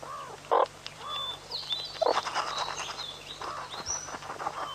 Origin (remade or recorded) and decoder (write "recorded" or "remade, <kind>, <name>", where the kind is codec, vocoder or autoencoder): remade, vocoder, BigVGAN v2